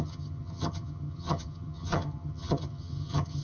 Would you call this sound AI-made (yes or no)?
yes